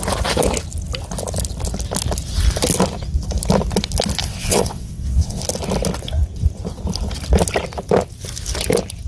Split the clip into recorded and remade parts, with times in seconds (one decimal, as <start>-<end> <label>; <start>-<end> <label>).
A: 0.0-4.3 recorded; 4.3-5.4 remade; 5.4-9.1 recorded